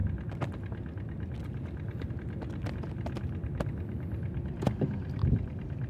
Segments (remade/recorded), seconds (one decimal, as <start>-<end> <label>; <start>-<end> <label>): 0.0-5.9 recorded

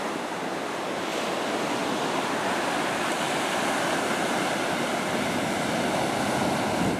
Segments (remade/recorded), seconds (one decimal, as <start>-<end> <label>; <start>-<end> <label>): 0.0-7.0 recorded